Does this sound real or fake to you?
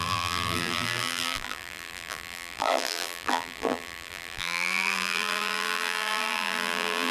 fake